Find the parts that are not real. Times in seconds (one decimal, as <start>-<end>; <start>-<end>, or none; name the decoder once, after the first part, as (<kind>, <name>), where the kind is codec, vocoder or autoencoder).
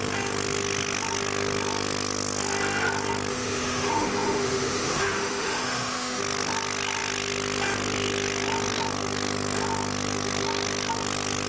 3.3-6.2 (autoencoder, DAC-VAE)